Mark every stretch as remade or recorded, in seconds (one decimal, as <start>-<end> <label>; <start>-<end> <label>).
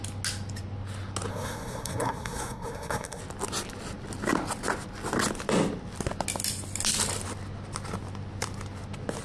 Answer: 0.0-1.3 recorded; 1.3-3.2 remade; 3.2-9.2 recorded